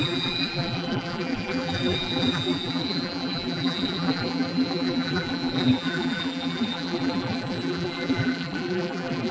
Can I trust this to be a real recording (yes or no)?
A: no